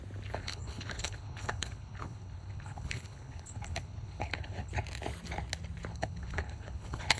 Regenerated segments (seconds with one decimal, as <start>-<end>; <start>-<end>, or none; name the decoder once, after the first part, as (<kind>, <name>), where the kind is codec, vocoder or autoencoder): 0.4-4.7 (codec, HILCodec); 5.9-7.2